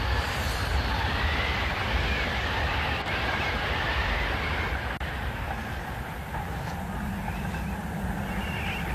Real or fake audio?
real